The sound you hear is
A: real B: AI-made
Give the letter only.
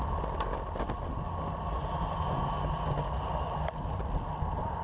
A